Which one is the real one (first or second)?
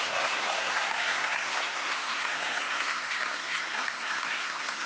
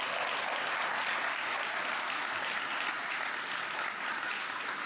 second